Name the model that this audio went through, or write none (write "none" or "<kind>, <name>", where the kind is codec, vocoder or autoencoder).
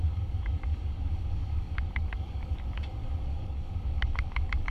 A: codec, DAC